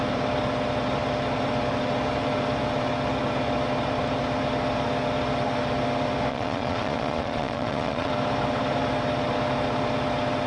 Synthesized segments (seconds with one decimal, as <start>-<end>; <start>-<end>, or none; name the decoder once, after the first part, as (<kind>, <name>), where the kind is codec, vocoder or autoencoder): 6.3-8.1 (vocoder, Vocos)